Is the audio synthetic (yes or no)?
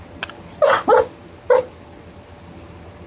no